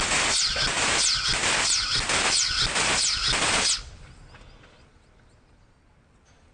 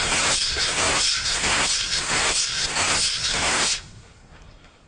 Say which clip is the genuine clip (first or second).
first